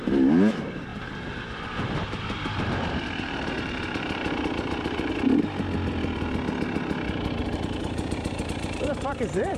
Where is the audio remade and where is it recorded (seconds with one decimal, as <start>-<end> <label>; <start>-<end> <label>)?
0.0-0.9 recorded; 0.9-5.1 remade; 5.1-7.4 recorded; 7.4-9.6 remade